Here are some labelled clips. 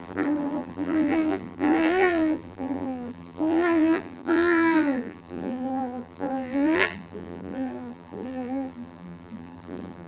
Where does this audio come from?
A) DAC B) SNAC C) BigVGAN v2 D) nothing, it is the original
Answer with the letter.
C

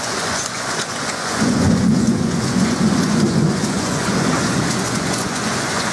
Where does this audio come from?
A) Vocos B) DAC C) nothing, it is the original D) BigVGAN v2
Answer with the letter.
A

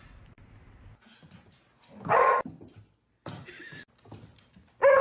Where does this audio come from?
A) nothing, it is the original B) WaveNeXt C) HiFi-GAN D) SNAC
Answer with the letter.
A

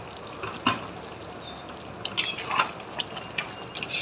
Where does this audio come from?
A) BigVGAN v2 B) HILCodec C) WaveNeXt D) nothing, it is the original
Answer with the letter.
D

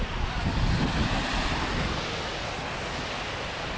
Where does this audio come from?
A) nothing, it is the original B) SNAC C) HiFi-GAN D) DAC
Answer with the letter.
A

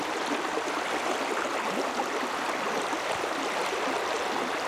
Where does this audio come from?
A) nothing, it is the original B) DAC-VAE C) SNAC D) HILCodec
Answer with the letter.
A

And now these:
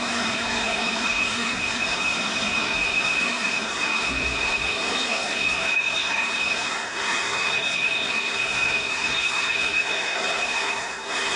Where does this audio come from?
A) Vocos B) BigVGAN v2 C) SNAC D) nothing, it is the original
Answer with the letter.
C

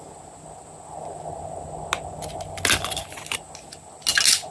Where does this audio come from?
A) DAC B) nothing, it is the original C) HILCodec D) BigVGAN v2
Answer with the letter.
B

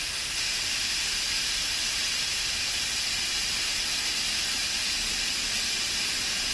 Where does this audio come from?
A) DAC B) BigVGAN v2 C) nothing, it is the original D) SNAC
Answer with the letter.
C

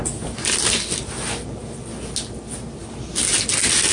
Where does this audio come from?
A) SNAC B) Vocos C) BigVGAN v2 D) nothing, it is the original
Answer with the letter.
D